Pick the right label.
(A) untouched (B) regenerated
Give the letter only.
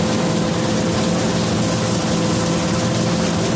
A